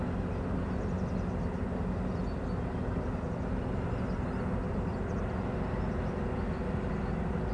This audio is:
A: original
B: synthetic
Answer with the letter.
A